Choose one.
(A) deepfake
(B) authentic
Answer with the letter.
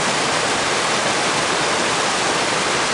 B